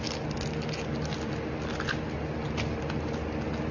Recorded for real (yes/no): yes